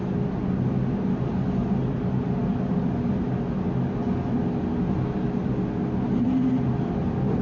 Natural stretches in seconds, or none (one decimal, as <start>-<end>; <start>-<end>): 0.0-7.4

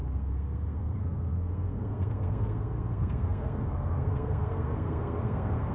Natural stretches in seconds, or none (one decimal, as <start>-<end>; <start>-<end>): none

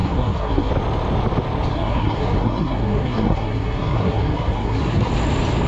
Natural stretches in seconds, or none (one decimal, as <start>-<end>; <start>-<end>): 0.7-1.7; 5.1-5.7